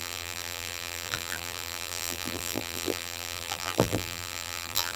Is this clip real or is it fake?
fake